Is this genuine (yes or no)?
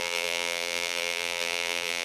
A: no